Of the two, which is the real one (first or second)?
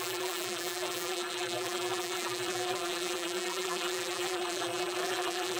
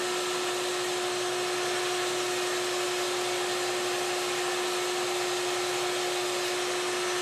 second